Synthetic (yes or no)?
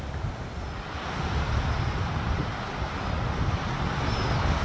no